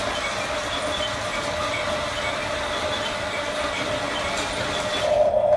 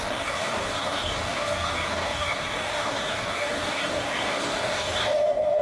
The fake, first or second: second